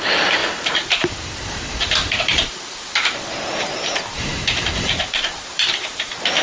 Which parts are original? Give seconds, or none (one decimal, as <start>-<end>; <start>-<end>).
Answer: none